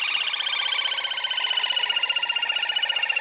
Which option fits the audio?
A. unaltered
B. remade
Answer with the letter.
A